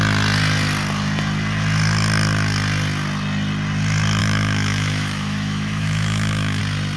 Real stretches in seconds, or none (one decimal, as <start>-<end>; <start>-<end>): 0.0-4.2; 6.6-7.0